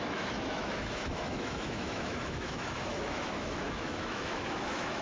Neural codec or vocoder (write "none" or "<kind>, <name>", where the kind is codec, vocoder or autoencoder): autoencoder, DAC-VAE